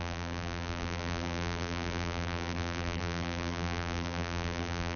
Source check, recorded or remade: remade